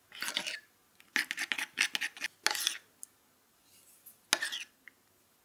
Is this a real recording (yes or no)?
yes